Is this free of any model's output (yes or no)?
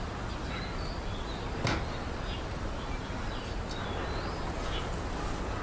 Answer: yes